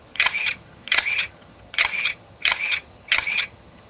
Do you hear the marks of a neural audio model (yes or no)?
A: yes